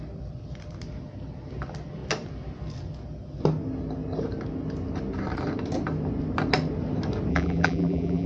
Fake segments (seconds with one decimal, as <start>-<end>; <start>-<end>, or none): 7.3-8.3